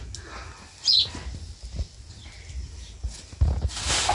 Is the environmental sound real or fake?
real